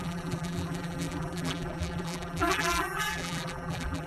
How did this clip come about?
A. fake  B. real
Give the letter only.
A